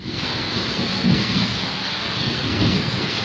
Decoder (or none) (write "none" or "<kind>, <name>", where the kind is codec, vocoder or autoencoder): codec, SNAC